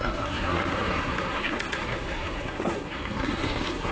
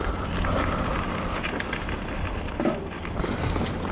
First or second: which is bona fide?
second